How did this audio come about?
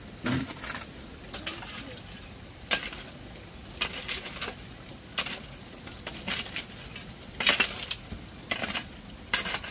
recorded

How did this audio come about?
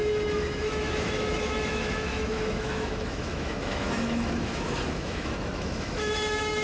remade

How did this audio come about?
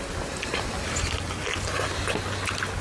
recorded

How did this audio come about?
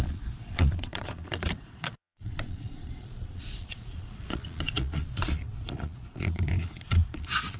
remade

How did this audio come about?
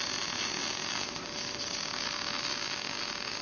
recorded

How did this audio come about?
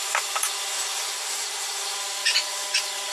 remade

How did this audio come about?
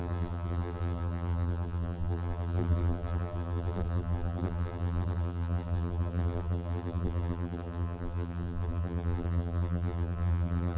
remade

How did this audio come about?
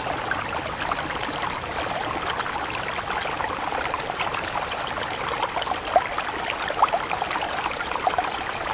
recorded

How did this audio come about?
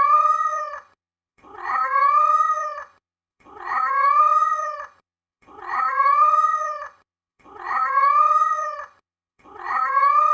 remade